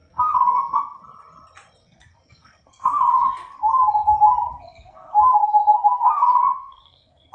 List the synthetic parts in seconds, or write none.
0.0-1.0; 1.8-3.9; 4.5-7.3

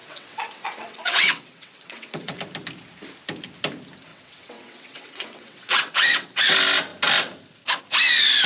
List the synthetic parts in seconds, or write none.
0.0-2.4; 4.1-6.4

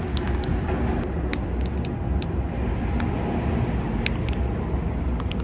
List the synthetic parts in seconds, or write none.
none

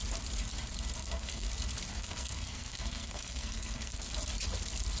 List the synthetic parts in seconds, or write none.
1.0-1.5; 1.9-4.1

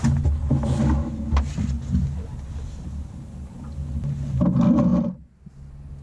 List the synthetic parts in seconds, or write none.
none

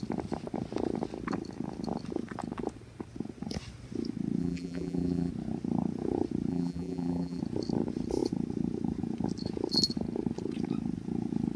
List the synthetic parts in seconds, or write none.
4.4-5.3; 6.5-7.4

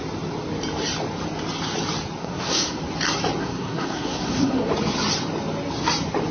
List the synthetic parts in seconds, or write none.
2.2-2.8; 3.4-4.7